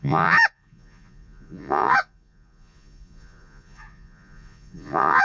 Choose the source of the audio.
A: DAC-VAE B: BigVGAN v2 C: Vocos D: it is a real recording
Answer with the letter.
C